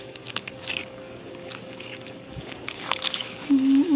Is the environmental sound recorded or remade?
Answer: remade